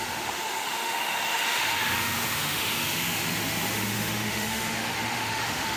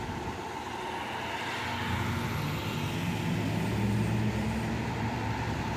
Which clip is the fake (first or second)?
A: first